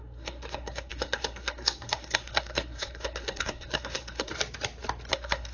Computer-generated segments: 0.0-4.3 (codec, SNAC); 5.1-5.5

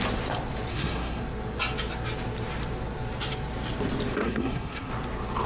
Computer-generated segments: 0.7-1.2 (codec, SNAC); 4.2-4.9

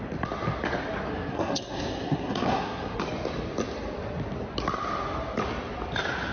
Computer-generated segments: 1.1-3.0 (codec, SNAC)

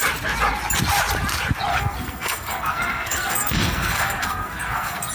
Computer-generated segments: 1.7-5.1 (codec, SNAC)

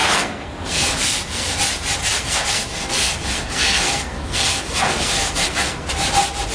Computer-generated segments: 0.0-1.6 (codec, SNAC); 2.0-5.9

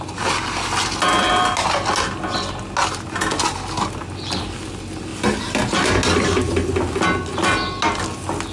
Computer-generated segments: none

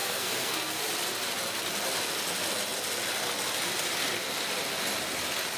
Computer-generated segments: 0.0-0.8 (codec, SNAC)

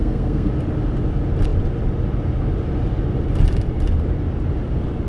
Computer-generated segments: 0.0-0.5 (codec, SNAC)